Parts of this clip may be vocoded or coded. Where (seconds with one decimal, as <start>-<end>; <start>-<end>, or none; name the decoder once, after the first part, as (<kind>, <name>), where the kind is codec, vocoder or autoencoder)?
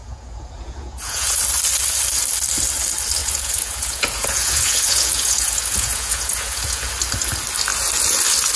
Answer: 0.0-1.4 (vocoder, Vocos); 3.2-6.9